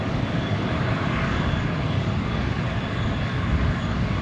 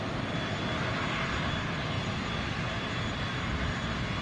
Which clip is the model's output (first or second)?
first